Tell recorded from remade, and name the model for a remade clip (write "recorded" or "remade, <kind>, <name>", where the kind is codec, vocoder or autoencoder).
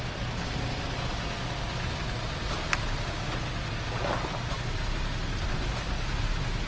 recorded